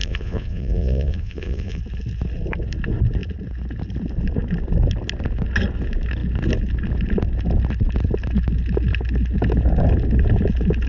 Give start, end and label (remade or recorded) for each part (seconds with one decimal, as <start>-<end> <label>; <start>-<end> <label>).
0.0-1.8 remade; 1.8-10.9 recorded